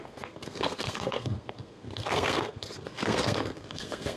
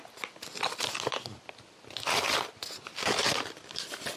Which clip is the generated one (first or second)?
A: first